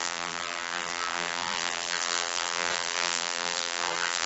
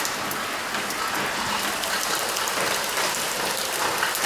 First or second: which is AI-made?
first